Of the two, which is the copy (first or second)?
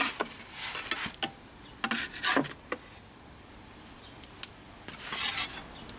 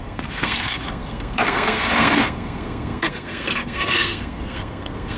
second